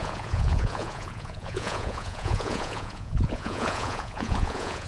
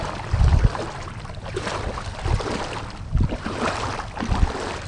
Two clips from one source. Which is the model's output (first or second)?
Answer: first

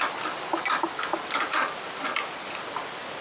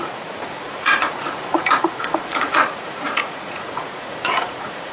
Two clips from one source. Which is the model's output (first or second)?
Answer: second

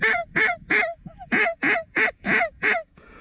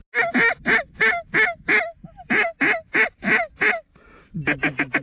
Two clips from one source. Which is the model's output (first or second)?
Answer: first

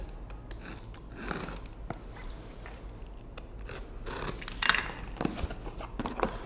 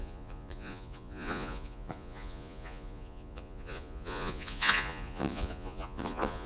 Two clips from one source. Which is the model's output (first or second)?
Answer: second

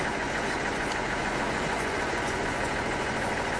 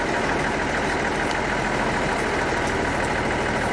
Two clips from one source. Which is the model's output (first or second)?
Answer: first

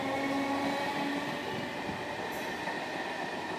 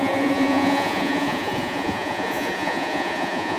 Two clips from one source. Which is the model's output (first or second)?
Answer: second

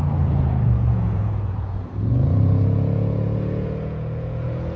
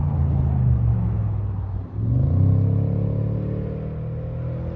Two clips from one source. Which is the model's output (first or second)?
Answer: first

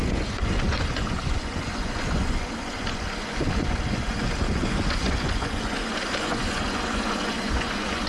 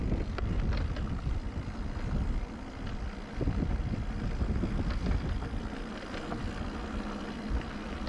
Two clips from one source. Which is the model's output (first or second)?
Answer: first